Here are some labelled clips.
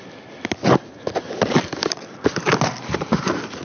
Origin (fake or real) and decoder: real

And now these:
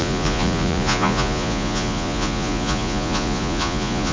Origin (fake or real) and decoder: fake, vocoder, Vocos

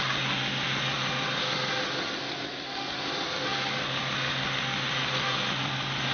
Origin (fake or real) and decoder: real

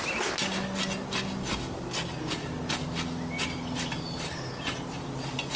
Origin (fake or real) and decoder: real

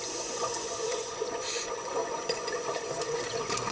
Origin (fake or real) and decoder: fake, vocoder, Vocos